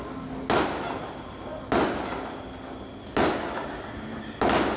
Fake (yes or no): no